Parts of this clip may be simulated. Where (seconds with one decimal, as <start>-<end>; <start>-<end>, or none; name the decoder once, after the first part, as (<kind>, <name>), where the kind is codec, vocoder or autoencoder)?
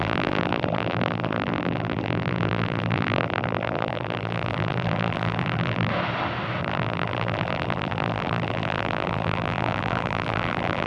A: 0.0-5.9 (vocoder, BigVGAN v2); 6.6-10.9